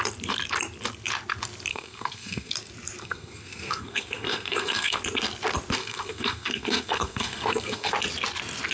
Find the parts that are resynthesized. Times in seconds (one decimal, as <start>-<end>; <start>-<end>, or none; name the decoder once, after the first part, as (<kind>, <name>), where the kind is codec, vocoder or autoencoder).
1.7-2.5 (codec, SNAC); 3.0-5.0; 5.8-7.9